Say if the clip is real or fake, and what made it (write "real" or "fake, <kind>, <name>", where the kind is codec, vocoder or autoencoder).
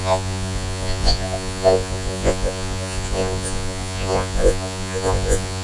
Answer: fake, vocoder, Vocos